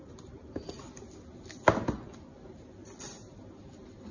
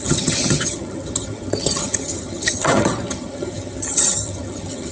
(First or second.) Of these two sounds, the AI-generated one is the second